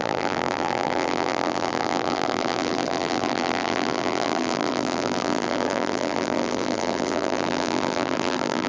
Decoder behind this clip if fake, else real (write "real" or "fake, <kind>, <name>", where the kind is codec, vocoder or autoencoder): fake, vocoder, BigVGAN v2